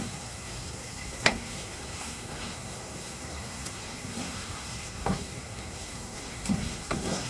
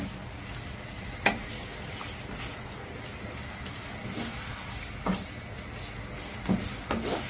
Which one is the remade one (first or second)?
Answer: first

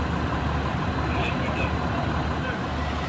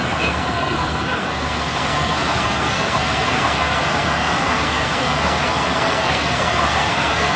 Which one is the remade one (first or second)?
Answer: second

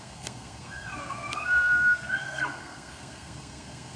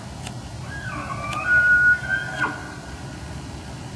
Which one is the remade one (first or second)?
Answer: first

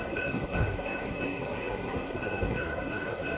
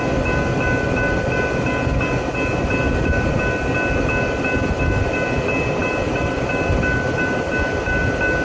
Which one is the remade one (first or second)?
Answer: first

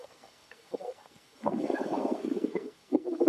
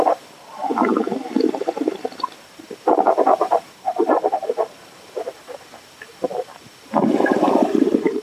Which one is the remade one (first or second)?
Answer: first